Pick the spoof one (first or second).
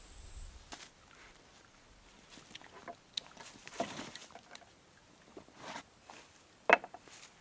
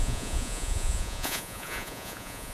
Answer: second